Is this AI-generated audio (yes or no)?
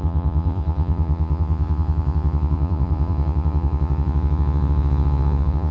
yes